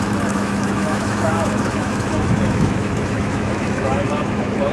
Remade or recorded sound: remade